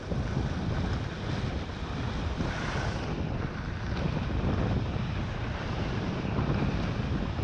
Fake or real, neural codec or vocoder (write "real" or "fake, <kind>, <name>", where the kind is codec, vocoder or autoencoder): real